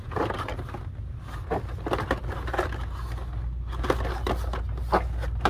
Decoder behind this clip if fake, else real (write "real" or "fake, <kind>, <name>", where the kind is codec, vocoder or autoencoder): real